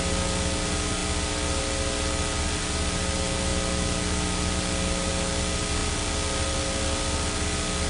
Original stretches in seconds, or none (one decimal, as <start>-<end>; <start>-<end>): 0.0-7.9